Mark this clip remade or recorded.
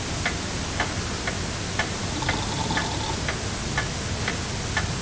recorded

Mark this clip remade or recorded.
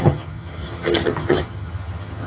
remade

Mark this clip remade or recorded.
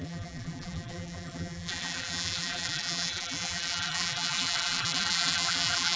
remade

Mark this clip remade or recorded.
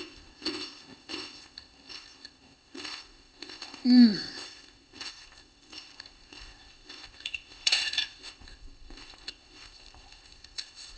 remade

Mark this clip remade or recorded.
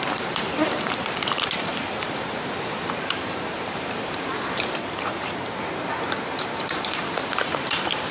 remade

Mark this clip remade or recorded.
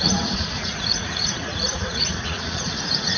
remade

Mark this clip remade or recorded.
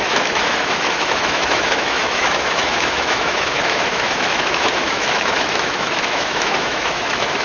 remade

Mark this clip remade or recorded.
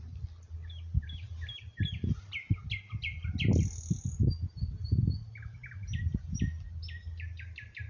recorded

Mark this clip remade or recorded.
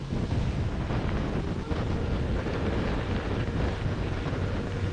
recorded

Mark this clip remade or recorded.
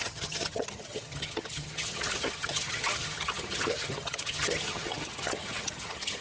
remade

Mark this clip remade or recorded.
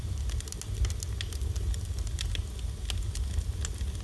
recorded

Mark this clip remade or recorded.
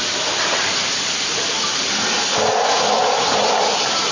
recorded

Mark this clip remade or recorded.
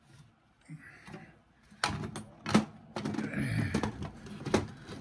recorded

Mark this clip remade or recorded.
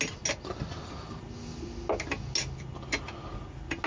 recorded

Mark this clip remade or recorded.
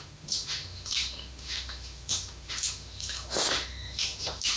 remade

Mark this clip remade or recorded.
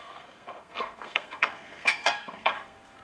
remade